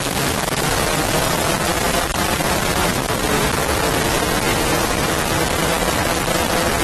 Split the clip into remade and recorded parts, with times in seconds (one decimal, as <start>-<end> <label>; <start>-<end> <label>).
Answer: 0.0-2.1 recorded; 2.1-3.5 remade; 3.5-4.5 recorded; 4.5-5.1 remade; 5.1-6.8 recorded